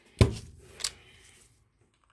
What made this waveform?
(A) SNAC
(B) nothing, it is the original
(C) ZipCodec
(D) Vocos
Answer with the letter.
B